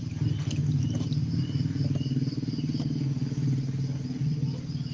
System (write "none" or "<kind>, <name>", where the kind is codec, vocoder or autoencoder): none